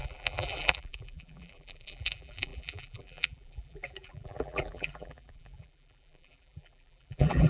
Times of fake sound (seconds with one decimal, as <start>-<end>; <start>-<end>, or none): 0.0-7.5